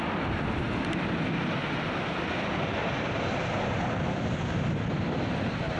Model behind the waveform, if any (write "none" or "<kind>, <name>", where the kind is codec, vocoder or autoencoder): none